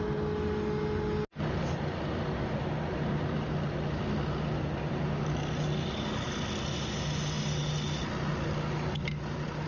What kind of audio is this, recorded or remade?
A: recorded